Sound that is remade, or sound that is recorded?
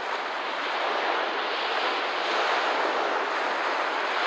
recorded